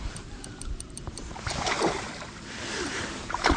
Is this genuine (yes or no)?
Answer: no